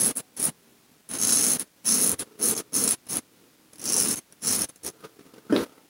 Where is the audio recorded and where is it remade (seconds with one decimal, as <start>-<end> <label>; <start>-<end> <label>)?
0.0-5.9 recorded